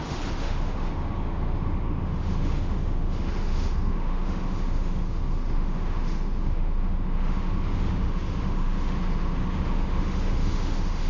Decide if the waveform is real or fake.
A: fake